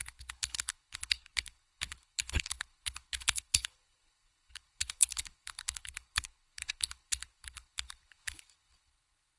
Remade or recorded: remade